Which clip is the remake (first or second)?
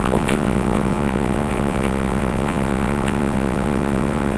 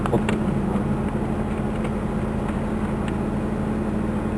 first